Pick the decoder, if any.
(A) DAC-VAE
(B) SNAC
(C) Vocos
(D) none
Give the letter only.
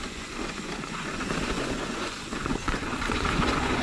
C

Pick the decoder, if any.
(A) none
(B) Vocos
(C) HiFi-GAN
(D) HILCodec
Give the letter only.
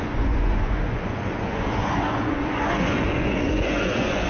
B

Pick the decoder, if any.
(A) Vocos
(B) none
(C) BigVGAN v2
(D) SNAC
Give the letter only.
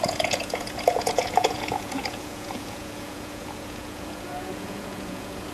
A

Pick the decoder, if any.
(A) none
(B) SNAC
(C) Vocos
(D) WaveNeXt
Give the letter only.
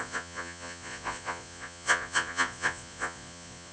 C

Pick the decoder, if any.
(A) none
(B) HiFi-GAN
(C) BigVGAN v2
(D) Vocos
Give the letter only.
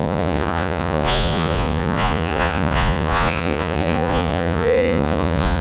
D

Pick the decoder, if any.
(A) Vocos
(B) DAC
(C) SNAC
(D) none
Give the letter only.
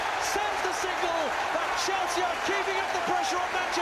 D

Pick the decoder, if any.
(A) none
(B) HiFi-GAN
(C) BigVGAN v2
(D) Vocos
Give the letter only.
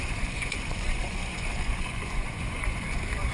D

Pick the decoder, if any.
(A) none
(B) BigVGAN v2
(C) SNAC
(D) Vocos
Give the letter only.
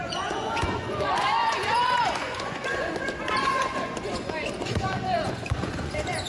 D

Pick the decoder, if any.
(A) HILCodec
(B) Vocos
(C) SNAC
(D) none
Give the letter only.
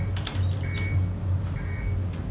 D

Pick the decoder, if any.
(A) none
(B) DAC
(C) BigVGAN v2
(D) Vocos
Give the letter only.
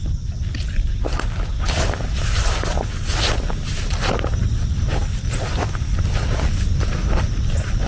A